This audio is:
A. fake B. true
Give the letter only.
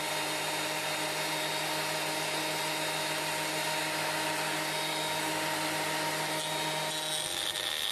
B